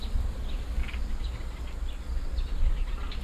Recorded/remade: recorded